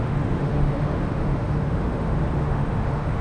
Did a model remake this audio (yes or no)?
yes